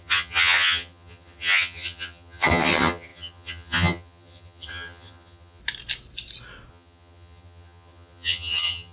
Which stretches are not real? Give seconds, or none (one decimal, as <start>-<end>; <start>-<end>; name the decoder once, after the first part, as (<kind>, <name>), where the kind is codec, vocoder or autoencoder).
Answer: 0.0-5.6 (vocoder, HiFi-GAN); 6.7-8.9